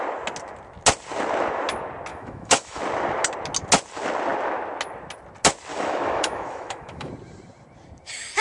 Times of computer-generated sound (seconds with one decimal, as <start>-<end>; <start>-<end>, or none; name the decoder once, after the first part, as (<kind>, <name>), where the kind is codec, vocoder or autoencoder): 2.1-2.8 (autoencoder, DAC-VAE); 5.7-7.1